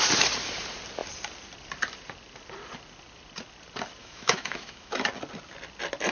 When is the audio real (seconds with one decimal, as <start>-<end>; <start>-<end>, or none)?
0.0-4.0; 5.1-6.1